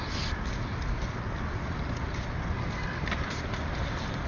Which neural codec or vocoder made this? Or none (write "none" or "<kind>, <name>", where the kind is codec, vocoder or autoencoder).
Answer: none